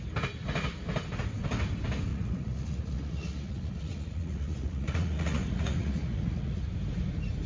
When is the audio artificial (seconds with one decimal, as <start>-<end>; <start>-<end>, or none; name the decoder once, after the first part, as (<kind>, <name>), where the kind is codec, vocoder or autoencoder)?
2.1-6.6 (vocoder, Vocos)